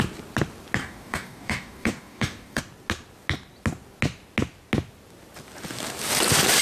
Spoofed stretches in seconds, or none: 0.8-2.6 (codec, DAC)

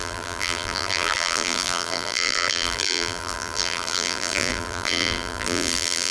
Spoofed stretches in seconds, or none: 0.0-6.1 (vocoder, BigVGAN v2)

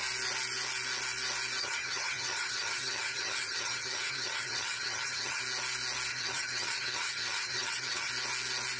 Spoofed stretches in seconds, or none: 1.6-5.4 (vocoder, HiFi-GAN); 6.1-8.1

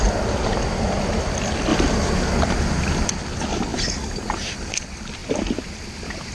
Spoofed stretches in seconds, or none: 0.0-3.7 (vocoder, BigVGAN v2); 4.6-5.2

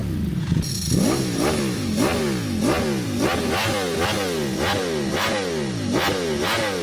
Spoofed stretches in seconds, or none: none